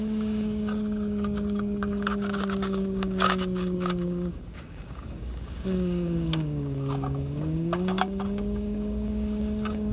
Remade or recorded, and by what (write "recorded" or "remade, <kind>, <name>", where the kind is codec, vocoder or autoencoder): remade, codec, DAC